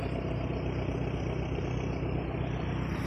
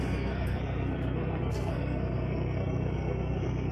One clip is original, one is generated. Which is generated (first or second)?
second